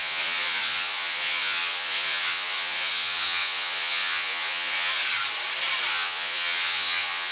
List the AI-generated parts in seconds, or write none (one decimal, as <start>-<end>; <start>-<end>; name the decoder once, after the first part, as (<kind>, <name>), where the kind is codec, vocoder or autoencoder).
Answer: 0.0-5.0 (vocoder, Vocos); 5.9-7.3